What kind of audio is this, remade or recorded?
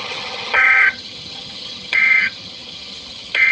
remade